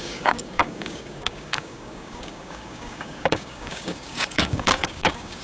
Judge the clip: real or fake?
fake